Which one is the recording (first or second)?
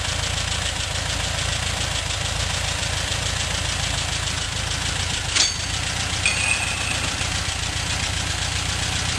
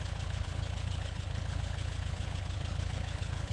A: first